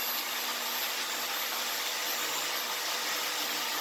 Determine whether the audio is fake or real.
real